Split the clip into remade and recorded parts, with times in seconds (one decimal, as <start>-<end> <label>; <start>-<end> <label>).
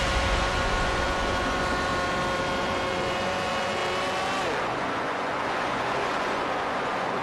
0.0-1.9 remade; 1.9-2.6 recorded; 2.6-3.8 remade; 3.8-4.6 recorded; 4.6-7.2 remade